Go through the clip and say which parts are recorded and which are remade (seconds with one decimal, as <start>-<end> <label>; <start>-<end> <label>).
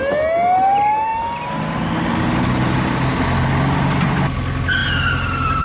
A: 0.0-5.6 recorded